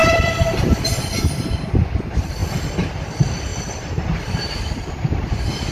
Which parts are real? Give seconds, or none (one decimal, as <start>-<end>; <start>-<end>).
2.0-3.5; 4.9-5.7